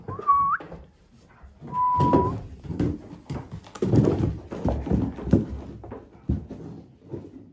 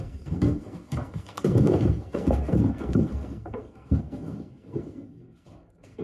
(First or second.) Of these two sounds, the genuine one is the first